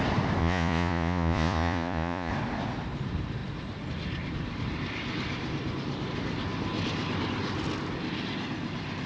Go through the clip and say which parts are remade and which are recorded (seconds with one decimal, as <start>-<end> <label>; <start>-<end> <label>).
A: 0.0-0.4 recorded; 0.4-2.3 remade; 2.3-9.1 recorded